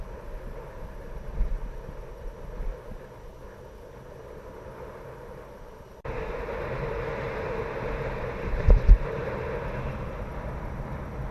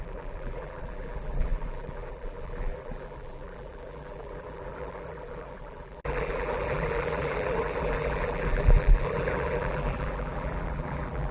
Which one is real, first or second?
first